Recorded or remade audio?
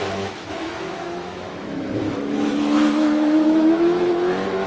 remade